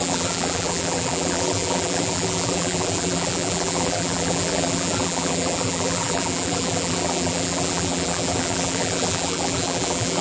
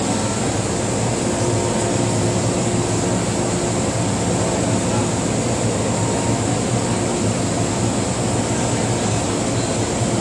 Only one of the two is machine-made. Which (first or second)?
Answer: first